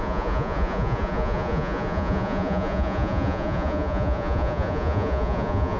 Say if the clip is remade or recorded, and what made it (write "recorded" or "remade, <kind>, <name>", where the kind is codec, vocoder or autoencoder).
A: remade, vocoder, Vocos